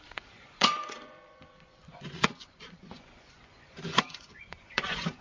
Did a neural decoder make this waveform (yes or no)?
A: yes